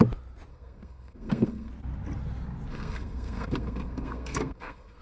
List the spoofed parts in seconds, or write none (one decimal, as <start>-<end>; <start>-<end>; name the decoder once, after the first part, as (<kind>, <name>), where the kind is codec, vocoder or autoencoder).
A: 0.5-1.7 (codec, SNAC); 2.7-5.0